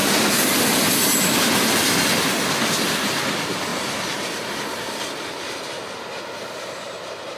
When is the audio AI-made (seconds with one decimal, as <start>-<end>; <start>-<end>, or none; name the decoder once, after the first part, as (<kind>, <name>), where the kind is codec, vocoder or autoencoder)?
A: 3.7-5.8 (vocoder, BigVGAN v2)